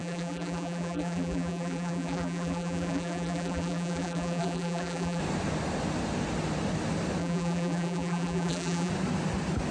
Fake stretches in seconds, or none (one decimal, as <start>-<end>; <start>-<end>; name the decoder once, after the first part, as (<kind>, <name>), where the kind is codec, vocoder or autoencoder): 0.0-5.2 (vocoder, BigVGAN v2); 7.2-8.9